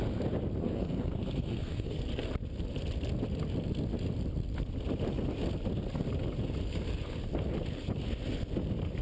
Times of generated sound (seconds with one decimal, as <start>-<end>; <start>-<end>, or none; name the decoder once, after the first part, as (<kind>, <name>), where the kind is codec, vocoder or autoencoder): 0.6-2.0 (codec, SNAC)

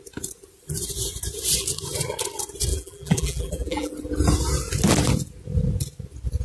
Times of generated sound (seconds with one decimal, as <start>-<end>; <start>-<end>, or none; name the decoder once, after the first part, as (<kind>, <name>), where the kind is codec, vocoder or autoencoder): 2.7-3.9 (vocoder, BigVGAN v2)

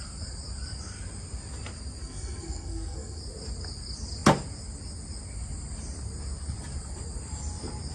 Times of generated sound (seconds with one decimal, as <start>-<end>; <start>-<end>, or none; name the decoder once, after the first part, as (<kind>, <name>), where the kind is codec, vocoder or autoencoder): 2.0-3.2 (codec, SNAC)